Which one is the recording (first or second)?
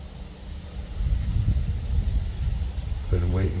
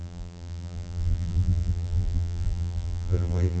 first